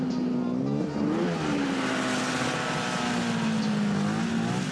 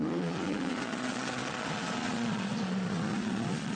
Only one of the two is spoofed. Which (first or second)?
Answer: second